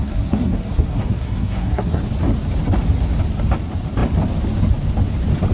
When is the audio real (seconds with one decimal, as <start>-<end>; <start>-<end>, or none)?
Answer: 2.0-5.5